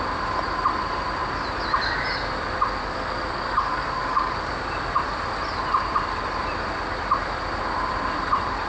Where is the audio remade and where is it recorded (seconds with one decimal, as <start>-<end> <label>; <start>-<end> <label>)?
0.0-2.8 recorded; 2.8-4.7 remade; 4.7-8.7 recorded